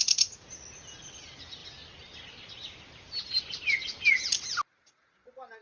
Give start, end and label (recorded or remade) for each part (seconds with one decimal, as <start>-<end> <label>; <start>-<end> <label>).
0.0-5.6 recorded